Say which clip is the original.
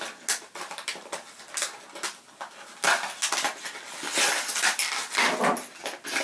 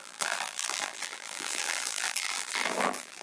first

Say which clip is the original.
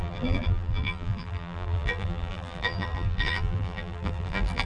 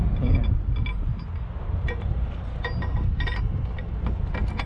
second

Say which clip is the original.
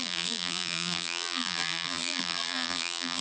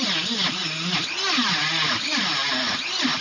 second